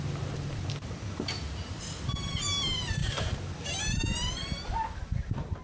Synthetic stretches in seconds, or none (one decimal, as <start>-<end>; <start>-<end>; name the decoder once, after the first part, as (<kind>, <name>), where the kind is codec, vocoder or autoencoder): none